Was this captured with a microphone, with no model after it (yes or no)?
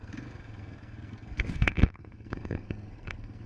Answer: no